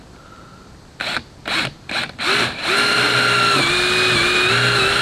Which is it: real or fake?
real